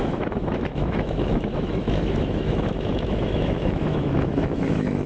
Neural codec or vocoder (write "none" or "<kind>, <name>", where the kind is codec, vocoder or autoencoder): autoencoder, DAC-VAE